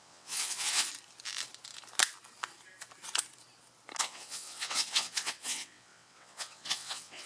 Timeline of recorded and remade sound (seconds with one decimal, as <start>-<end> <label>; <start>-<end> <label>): 0.0-0.9 remade; 0.9-4.0 recorded; 4.0-7.3 remade